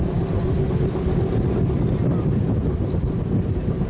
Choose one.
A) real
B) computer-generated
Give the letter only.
A